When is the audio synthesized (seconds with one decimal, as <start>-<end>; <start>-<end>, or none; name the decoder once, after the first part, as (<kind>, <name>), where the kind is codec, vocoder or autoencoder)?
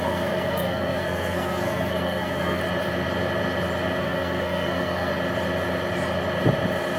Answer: 0.0-2.6 (codec, SNAC); 4.0-5.1